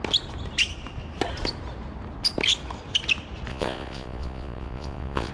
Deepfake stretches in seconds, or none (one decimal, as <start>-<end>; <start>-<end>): 3.5-5.3